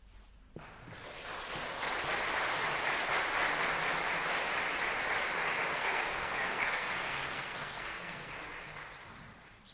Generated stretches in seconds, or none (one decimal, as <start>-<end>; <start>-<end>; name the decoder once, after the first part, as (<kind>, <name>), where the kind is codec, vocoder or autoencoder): 5.7-8.3 (codec, SNAC)